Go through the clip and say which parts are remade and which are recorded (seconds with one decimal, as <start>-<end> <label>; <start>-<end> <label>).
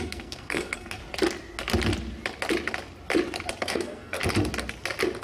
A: 0.0-1.0 remade; 1.0-3.6 recorded; 3.6-4.2 remade; 4.2-5.2 recorded